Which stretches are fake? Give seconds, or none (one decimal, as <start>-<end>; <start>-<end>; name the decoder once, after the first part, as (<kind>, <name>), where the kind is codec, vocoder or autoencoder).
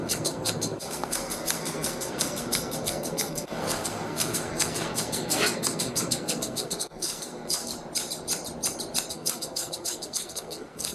0.0-7.7 (codec, SNAC); 9.1-10.9